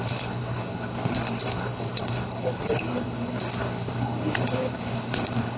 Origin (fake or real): fake